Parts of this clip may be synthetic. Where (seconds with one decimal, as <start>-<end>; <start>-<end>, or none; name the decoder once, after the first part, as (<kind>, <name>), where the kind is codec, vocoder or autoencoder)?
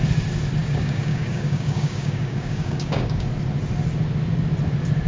0.6-3.3 (codec, DAC)